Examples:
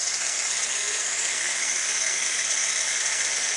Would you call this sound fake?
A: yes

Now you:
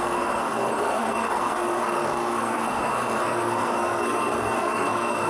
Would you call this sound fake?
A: yes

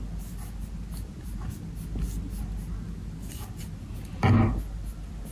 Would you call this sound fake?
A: no